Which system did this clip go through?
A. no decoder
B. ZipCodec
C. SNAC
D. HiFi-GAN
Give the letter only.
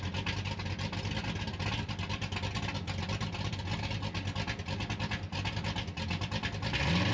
A